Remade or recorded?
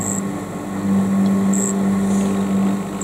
recorded